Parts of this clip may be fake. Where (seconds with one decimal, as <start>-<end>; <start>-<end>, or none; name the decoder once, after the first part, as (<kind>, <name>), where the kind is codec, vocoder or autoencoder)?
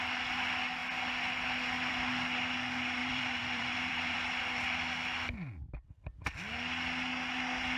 3.0-4.4 (vocoder, BigVGAN v2)